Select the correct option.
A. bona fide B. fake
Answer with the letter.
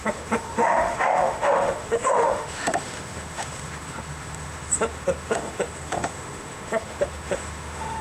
B